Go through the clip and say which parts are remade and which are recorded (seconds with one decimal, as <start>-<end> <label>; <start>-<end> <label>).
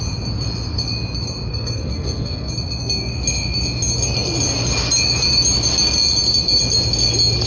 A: 0.0-1.5 recorded; 1.5-2.5 remade; 2.5-7.5 recorded